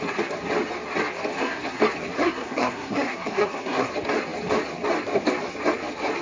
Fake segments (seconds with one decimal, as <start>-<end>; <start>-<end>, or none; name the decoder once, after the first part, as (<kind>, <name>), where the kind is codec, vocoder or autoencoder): 1.3-1.8 (codec, SNAC); 2.2-3.9